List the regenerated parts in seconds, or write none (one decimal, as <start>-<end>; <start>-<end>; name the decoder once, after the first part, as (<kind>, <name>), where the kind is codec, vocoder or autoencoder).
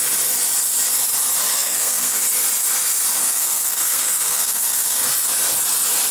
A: 1.5-2.2 (codec, SNAC); 3.2-5.0